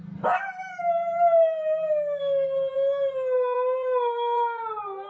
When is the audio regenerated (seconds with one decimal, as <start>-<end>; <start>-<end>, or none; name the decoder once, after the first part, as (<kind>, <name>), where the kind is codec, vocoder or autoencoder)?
none